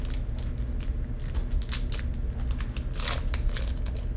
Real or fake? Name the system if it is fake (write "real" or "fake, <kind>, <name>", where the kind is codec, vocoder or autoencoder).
real